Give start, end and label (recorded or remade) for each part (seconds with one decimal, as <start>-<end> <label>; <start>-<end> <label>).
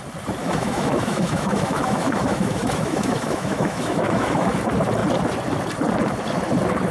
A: 0.0-0.4 recorded; 0.4-4.5 remade; 4.5-6.9 recorded